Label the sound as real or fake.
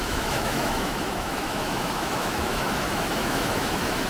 fake